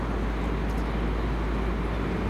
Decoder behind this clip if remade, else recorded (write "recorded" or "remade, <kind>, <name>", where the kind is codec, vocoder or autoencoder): recorded